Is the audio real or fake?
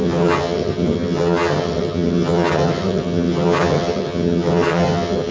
fake